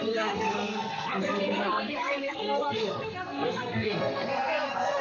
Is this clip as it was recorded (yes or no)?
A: no